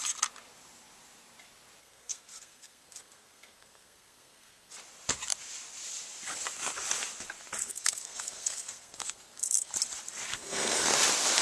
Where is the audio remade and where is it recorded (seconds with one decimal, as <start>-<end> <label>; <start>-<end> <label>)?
0.0-1.8 recorded; 1.8-4.7 remade; 4.7-7.6 recorded; 7.6-9.7 remade; 9.7-10.3 recorded; 10.3-10.9 remade; 10.9-11.4 recorded